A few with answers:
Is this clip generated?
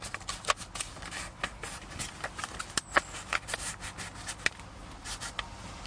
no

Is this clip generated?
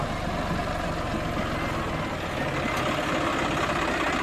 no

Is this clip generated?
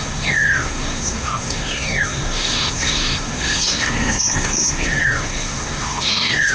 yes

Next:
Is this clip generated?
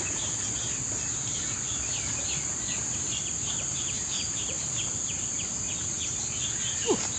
no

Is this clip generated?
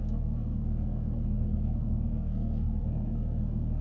yes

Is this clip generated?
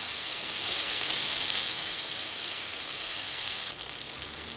yes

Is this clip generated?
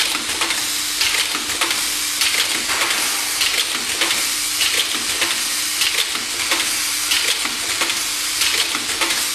no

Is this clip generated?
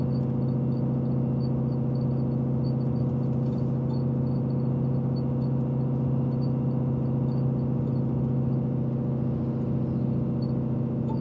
no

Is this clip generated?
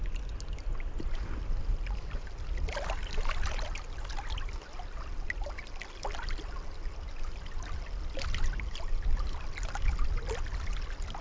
no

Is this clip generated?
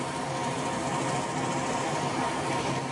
no